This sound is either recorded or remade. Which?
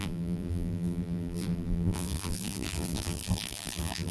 remade